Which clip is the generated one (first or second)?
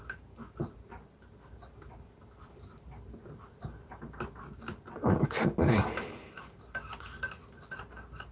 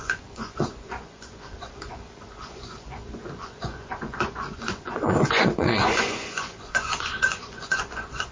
second